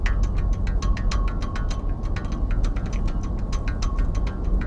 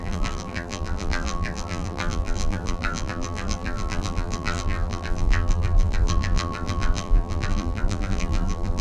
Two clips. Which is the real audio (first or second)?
first